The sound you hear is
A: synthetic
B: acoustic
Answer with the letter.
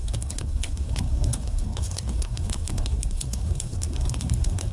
A